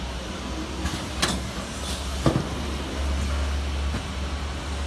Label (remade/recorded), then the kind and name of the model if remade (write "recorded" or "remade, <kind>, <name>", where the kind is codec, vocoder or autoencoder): recorded